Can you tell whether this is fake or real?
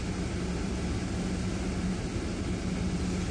real